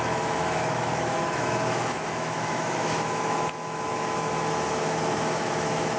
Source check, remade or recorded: remade